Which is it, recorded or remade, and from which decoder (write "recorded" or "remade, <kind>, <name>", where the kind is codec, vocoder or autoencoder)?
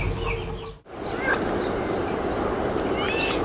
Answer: recorded